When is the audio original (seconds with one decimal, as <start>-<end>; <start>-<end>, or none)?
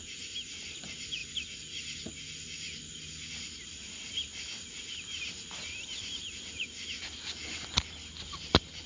0.0-8.9